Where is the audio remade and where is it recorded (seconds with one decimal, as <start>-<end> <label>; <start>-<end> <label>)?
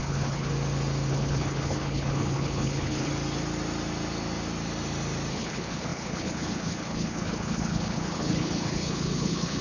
0.0-0.5 remade; 0.5-1.1 recorded; 1.1-3.1 remade; 3.1-5.3 recorded; 5.3-9.6 remade